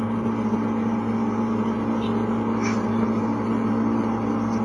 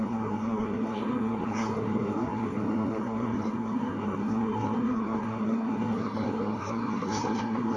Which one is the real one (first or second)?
first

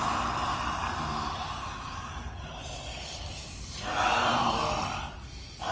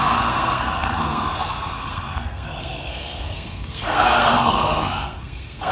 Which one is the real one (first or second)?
first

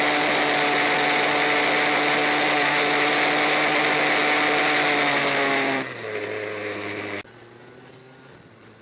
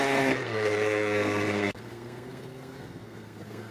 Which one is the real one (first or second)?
first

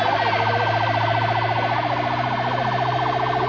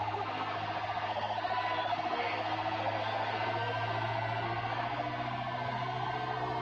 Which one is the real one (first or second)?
first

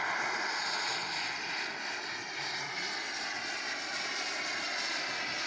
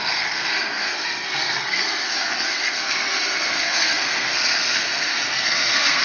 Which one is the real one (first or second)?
first